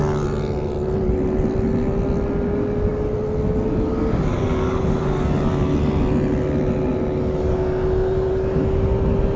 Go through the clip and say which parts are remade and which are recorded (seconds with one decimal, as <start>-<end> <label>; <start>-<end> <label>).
0.0-9.4 recorded